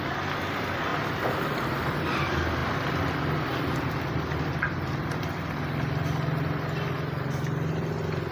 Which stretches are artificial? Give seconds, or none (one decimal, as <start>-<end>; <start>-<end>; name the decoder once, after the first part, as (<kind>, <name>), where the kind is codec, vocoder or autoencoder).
0.9-2.2 (vocoder, BigVGAN v2)